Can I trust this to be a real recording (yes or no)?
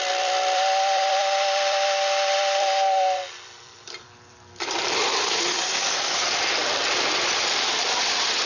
no